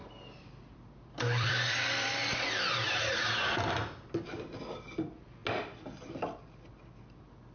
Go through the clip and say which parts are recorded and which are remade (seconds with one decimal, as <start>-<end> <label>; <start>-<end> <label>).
0.0-2.1 remade; 2.1-7.5 recorded